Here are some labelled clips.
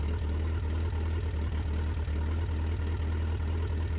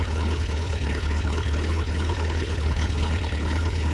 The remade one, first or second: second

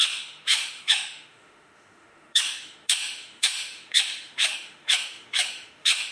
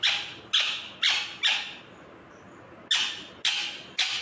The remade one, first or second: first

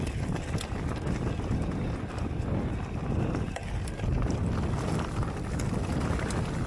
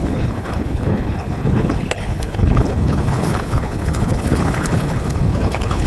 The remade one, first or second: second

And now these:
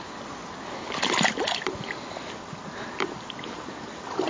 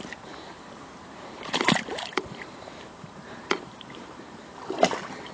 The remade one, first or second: second